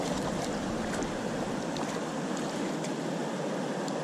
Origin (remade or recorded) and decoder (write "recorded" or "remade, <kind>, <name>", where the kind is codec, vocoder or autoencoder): recorded